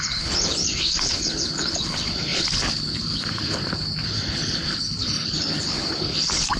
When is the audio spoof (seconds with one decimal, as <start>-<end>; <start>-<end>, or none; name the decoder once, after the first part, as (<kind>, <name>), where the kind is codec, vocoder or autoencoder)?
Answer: 0.0-6.6 (codec, HILCodec)